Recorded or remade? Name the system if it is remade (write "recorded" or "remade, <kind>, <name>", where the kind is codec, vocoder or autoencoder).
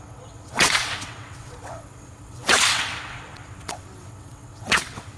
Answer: remade, vocoder, WaveNeXt